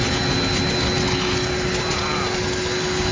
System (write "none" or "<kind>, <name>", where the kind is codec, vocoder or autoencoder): none